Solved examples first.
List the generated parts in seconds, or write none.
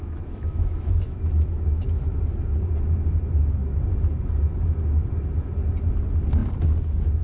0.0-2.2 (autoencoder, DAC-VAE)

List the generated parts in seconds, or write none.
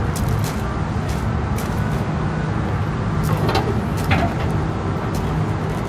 none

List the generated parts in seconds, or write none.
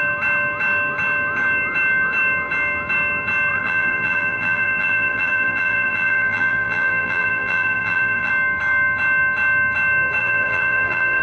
3.5-8.3 (vocoder, BigVGAN v2); 10.2-11.2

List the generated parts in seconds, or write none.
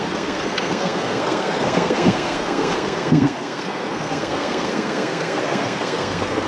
0.0-6.5 (codec, SNAC)